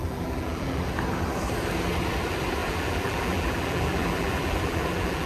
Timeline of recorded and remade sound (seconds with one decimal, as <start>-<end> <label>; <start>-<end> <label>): 0.0-0.9 remade; 0.9-2.6 recorded; 2.6-5.3 remade